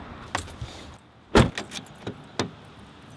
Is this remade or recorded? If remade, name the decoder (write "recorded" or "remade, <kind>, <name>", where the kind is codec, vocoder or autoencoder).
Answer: recorded